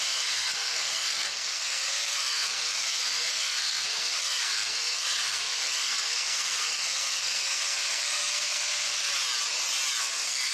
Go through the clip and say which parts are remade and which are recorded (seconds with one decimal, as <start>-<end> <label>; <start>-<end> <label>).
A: 0.0-9.1 remade; 9.1-10.0 recorded; 10.0-10.5 remade